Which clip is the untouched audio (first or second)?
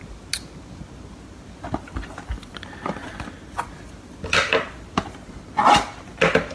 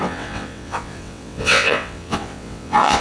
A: first